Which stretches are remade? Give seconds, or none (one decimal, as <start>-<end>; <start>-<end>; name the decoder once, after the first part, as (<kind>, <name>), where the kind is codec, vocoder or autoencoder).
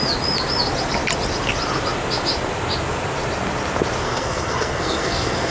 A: 4.0-5.5 (codec, SNAC)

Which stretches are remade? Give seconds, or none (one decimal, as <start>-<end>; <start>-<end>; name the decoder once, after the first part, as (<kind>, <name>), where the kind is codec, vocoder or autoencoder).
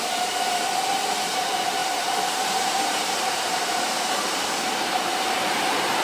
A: 0.0-6.0 (vocoder, BigVGAN v2)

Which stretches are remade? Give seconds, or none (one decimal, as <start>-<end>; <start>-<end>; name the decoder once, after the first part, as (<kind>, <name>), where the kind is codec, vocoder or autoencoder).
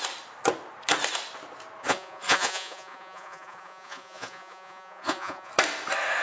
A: 1.8-5.5 (vocoder, Vocos)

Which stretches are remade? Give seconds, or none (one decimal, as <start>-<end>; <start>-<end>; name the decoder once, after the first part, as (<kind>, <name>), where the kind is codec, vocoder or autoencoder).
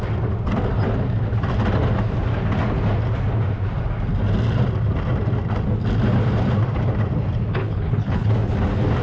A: 7.6-8.3 (codec, HILCodec)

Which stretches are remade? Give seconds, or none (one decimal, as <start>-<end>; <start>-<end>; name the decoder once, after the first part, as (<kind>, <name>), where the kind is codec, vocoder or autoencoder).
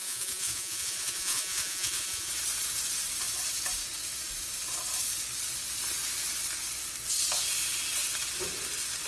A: 0.0-2.3 (vocoder, Vocos)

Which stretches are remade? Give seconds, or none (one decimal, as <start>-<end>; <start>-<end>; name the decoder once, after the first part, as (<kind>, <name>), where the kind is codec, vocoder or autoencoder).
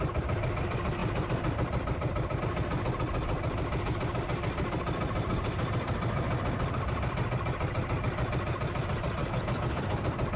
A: 9.2-9.8 (codec, HILCodec)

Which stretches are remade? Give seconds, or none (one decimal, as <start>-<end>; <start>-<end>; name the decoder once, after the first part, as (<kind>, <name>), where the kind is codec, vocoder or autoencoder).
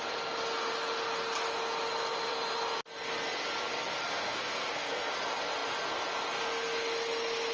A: 4.0-5.1 (codec, SNAC)